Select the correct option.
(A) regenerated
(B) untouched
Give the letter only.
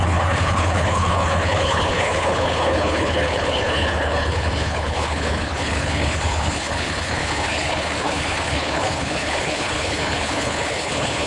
A